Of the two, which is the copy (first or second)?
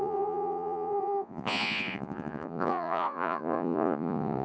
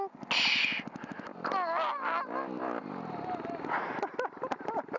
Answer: first